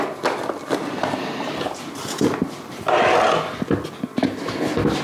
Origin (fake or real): real